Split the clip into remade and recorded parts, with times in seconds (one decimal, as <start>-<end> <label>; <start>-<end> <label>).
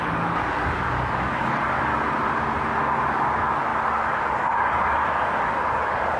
0.0-1.9 remade; 1.9-2.8 recorded; 2.8-6.2 remade